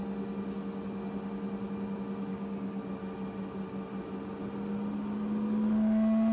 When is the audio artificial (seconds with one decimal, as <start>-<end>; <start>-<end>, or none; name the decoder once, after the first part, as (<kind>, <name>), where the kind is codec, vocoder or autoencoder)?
2.3-2.8 (codec, DAC)